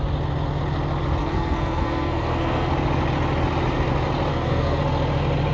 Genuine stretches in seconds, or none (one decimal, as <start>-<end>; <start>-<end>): 0.0-1.2; 2.7-4.3; 4.8-5.5